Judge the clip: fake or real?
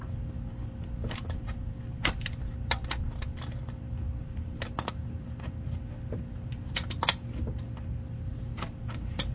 real